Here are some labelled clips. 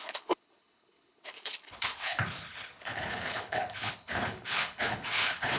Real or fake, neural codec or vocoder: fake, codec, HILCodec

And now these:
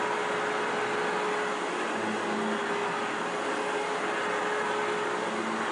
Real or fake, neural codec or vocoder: real